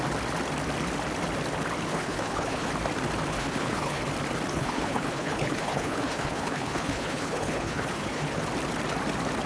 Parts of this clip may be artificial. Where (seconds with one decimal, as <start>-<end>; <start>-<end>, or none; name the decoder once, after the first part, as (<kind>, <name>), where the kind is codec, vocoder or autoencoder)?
1.9-2.7 (codec, HILCodec); 3.3-4.0; 4.5-8.4